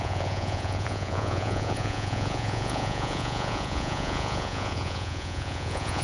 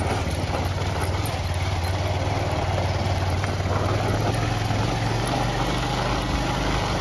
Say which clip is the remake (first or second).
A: first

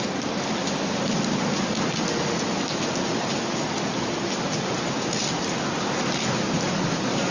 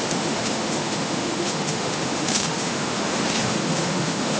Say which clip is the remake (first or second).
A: second